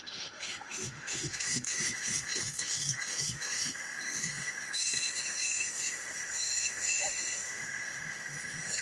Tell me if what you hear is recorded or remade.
remade